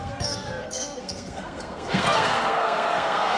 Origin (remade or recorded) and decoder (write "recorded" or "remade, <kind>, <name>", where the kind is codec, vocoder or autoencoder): remade, codec, SNAC